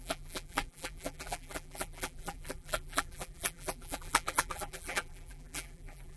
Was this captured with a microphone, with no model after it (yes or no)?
no